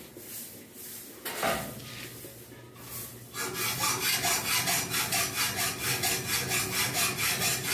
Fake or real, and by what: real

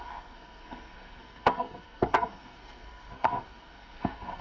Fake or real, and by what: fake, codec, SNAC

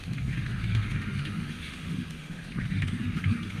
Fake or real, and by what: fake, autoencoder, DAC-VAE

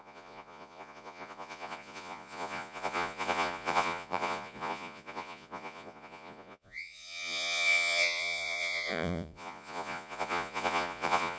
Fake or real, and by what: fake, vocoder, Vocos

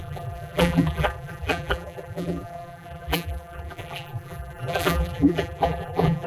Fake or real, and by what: fake, vocoder, BigVGAN v2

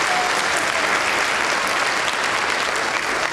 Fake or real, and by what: real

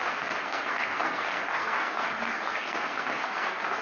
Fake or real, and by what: fake, codec, SNAC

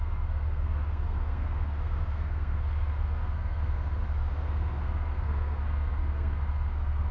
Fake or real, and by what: fake, codec, SNAC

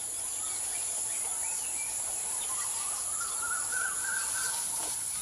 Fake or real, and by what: fake, vocoder, BigVGAN v2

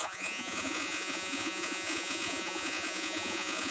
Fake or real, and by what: fake, vocoder, Vocos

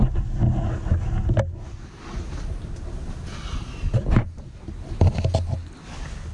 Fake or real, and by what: real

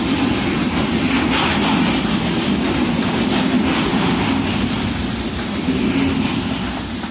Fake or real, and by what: real